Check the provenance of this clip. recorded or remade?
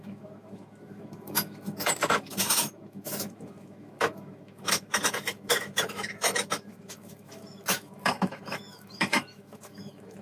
remade